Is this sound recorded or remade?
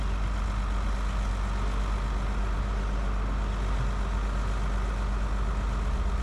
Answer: recorded